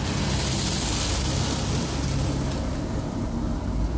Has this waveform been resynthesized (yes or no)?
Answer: no